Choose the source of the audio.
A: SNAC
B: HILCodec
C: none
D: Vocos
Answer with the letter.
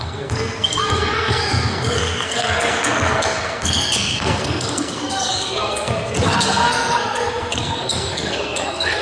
A